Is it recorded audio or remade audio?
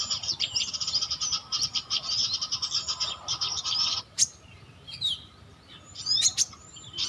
remade